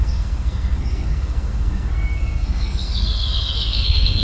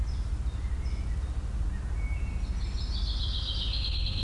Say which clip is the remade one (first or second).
first